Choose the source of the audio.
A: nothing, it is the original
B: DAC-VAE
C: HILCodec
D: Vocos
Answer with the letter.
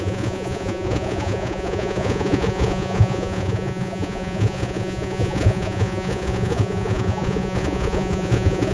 D